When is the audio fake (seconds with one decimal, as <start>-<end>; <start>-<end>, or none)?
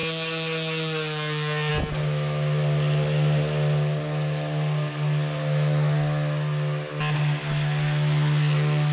none